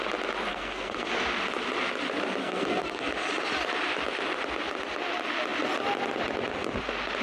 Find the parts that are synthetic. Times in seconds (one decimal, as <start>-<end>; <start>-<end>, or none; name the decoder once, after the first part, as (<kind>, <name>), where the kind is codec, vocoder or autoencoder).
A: 0.5-1.1 (codec, SNAC); 2.4-3.1